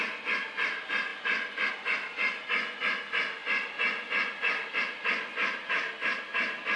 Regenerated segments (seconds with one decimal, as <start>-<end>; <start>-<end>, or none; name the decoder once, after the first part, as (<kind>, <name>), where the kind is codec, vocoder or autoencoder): 1.1-1.7 (vocoder, BigVGAN v2); 5.4-5.9